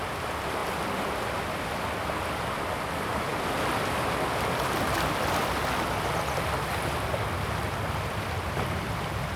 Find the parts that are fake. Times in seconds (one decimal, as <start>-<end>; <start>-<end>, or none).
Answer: none